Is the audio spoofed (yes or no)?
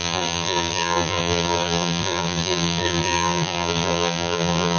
yes